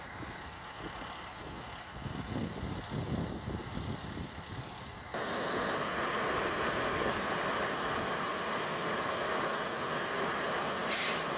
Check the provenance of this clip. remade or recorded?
recorded